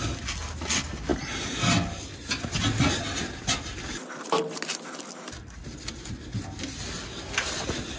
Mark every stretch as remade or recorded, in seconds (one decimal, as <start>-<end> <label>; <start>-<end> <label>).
0.0-8.0 recorded